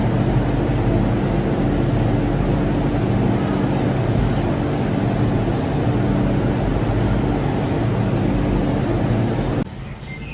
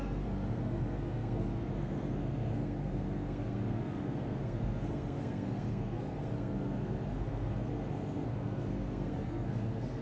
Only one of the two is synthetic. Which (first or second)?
second